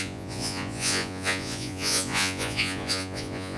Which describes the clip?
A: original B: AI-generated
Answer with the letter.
B